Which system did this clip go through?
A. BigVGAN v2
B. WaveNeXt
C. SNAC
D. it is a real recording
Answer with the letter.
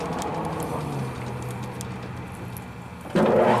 D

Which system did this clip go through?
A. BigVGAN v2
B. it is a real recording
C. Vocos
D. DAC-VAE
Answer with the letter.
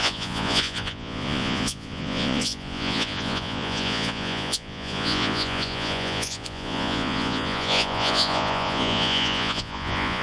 C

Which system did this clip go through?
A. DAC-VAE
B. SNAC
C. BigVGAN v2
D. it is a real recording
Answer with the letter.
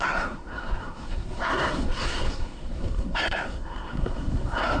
B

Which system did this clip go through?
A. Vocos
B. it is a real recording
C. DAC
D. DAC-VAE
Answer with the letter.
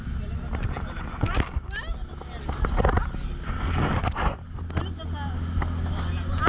B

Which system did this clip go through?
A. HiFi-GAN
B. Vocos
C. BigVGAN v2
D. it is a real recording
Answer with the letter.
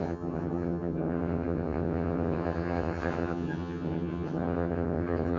A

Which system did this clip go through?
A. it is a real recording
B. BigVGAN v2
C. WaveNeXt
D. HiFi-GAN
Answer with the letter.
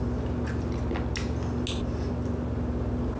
A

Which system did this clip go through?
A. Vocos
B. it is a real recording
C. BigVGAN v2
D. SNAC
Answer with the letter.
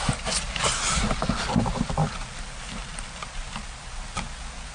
B